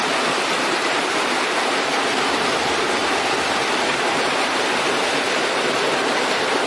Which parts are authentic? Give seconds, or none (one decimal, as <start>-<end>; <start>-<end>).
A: 3.0-3.6